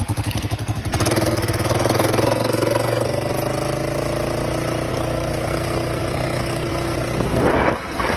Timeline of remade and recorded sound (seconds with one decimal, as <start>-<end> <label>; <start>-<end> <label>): 0.0-3.3 remade; 3.3-4.9 recorded; 4.9-8.2 remade